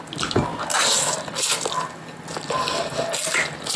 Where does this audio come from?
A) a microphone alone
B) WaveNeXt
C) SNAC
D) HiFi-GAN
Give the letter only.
A